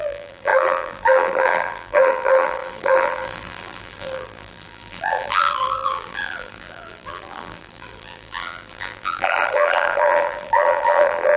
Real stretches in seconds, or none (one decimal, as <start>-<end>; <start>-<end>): none